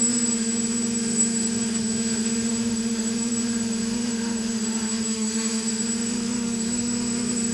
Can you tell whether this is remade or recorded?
remade